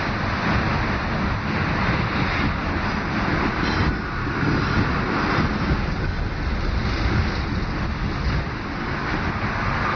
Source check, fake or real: real